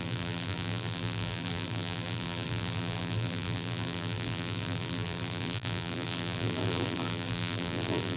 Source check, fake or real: fake